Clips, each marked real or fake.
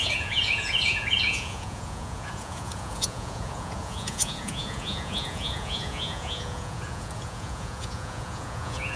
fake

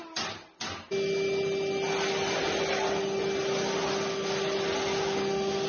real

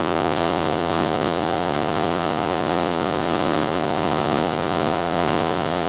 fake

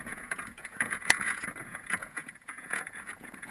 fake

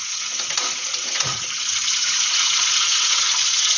fake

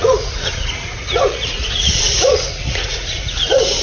fake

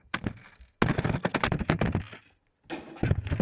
real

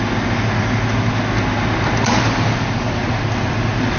real